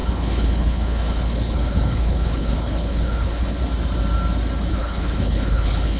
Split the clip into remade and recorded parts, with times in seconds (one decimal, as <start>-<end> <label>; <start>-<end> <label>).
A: 0.0-3.6 remade; 3.6-4.7 recorded; 4.7-6.0 remade